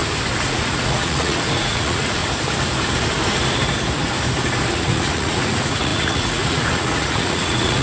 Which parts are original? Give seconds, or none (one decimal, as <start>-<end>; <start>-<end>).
0.0-0.5; 2.2-4.7